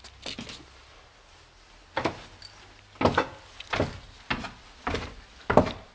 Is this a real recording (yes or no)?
yes